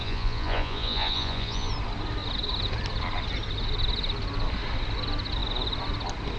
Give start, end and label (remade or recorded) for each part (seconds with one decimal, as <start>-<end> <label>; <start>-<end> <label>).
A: 0.0-1.7 remade; 1.7-6.4 recorded